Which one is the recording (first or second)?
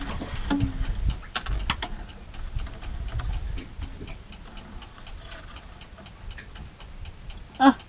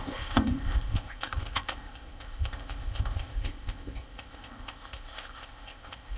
first